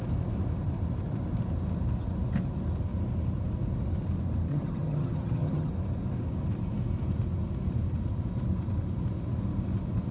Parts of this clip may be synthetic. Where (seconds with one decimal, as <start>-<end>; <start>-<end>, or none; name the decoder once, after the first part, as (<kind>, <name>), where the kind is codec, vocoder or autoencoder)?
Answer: 4.5-5.7 (vocoder, HiFi-GAN)